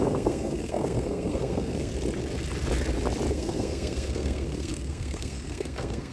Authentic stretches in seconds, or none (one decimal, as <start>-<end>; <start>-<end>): 1.9-3.3